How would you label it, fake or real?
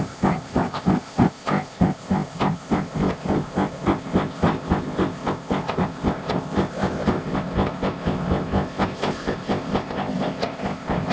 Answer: fake